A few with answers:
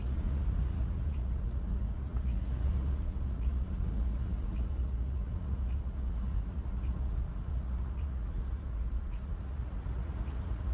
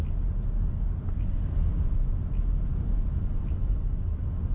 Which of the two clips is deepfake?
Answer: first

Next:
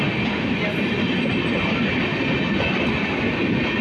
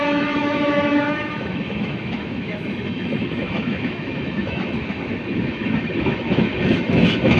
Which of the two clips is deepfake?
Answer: second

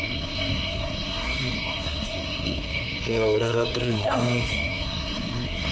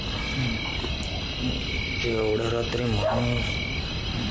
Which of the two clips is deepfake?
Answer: first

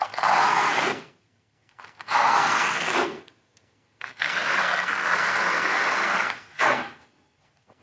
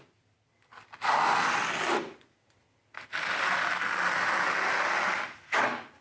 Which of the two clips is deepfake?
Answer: first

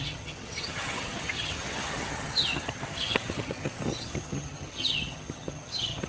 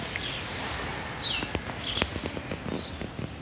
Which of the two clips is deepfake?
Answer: first